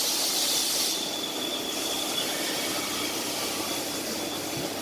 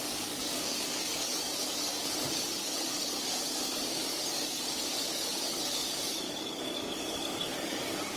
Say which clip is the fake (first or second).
second